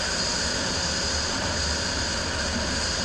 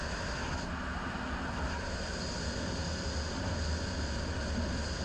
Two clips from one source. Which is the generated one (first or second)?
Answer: first